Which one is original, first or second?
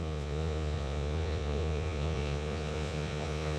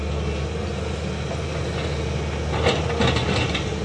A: second